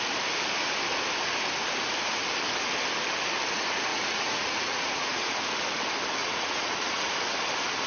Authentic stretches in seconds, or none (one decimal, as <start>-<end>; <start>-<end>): 0.0-3.9; 5.5-6.2; 7.1-7.9